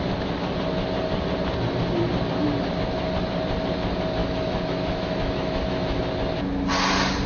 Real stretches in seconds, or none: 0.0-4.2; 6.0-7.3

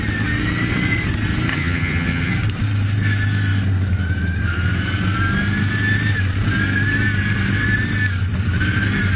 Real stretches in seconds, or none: 0.0-1.5; 2.3-9.2

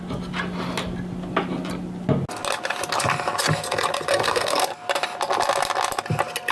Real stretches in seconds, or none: 0.0-4.1; 4.6-6.5

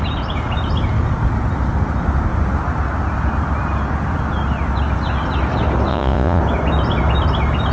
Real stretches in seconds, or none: 0.0-5.9; 6.4-7.7

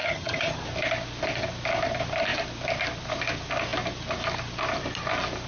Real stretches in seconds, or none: 0.6-5.5

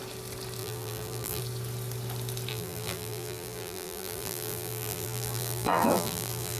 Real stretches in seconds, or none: 0.0-0.6; 1.4-2.5

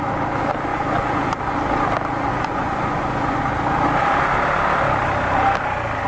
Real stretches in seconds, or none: 0.0-0.7; 1.4-2.3; 3.4-6.1